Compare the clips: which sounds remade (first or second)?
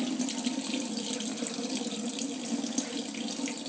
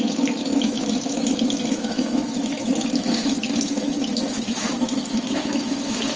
second